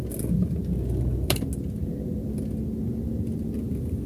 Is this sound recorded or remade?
recorded